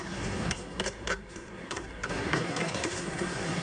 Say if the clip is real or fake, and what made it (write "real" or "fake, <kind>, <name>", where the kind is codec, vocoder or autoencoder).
fake, codec, SNAC